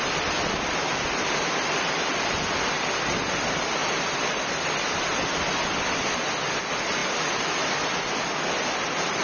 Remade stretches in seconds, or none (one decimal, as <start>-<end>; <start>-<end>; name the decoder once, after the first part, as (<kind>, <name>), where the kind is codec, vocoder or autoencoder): 3.8-6.3 (vocoder, BigVGAN v2); 7.0-7.5